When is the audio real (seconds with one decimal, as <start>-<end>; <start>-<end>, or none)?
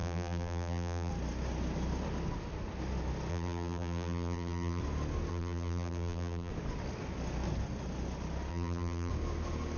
1.1-3.3; 4.8-5.3; 6.5-8.5; 9.1-9.8